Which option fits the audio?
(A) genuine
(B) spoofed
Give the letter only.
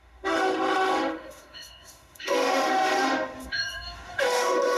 B